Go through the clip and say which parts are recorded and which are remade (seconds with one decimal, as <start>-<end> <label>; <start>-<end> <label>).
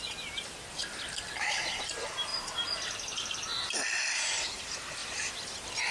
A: 0.0-0.8 recorded; 0.8-1.9 remade; 1.9-2.3 recorded; 2.3-4.6 remade; 4.6-5.0 recorded; 5.0-5.9 remade